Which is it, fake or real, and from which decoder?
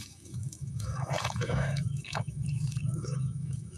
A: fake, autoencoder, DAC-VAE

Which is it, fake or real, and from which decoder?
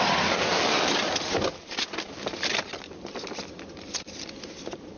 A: real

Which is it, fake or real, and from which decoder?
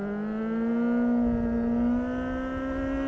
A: real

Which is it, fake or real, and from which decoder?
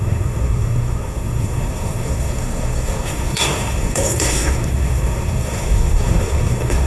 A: fake, codec, SNAC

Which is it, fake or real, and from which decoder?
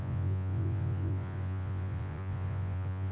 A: fake, vocoder, Vocos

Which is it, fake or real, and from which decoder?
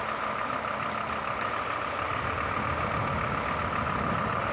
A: fake, vocoder, BigVGAN v2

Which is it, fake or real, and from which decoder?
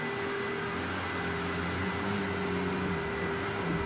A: real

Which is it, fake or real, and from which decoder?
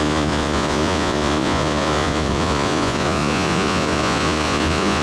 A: fake, vocoder, Vocos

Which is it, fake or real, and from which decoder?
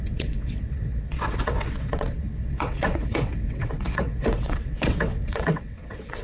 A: fake, vocoder, WaveNeXt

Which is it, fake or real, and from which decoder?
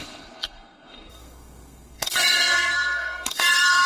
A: fake, codec, SNAC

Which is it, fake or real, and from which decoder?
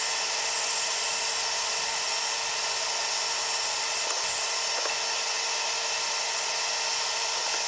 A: real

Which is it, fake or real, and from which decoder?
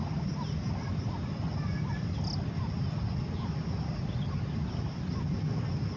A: real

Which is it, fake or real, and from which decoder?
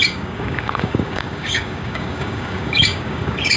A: fake, codec, DAC